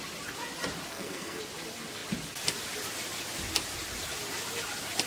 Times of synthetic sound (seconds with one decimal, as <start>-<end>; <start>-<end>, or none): 0.9-1.4